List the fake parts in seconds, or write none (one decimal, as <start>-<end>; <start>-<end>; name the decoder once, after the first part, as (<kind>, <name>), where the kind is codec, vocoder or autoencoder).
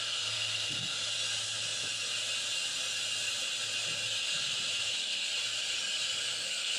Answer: 0.0-1.1 (codec, SNAC); 4.8-5.3; 6.2-6.8